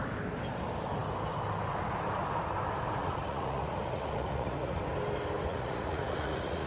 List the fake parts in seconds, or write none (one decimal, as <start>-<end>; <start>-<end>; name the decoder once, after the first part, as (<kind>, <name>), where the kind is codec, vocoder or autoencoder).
3.0-4.8 (vocoder, Vocos); 5.5-6.7